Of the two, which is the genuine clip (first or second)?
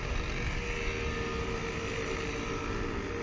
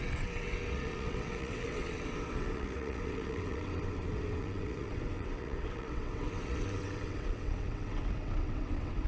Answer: first